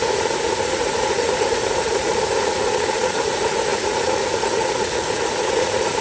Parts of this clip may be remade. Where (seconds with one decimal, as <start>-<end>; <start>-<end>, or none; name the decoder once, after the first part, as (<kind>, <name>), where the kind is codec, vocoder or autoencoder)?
0.0-6.0 (vocoder, Vocos)